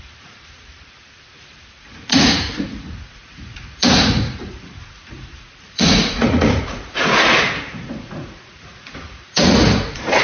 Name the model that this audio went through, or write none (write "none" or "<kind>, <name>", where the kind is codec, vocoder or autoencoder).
vocoder, Vocos